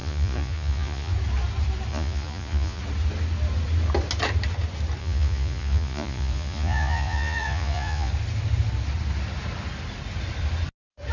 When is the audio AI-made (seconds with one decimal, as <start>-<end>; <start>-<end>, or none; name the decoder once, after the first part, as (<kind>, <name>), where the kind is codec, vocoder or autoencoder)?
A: 0.0-1.1 (vocoder, Vocos); 1.9-2.8; 5.0-8.1